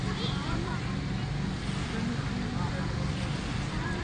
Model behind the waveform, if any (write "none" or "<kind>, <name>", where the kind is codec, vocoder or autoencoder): none